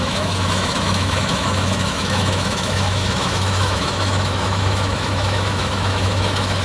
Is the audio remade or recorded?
remade